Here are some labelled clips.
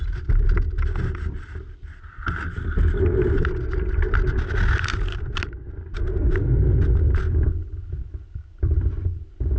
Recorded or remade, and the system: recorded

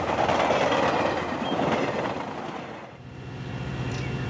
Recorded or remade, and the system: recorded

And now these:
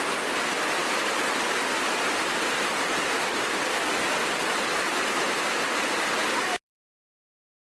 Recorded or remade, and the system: recorded